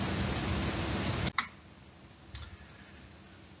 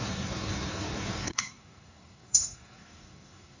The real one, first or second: first